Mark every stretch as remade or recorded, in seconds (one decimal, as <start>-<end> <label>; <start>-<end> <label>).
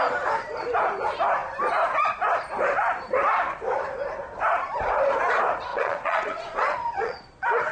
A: 0.0-5.7 recorded; 5.7-7.2 remade; 7.2-7.7 recorded